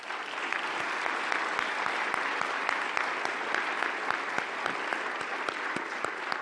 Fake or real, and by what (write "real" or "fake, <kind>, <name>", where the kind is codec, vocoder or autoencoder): real